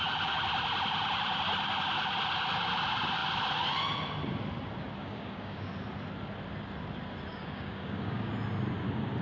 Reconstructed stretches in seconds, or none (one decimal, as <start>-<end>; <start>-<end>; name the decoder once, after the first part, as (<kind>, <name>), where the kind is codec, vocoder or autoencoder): 5.0-5.7 (codec, DAC); 7.3-8.3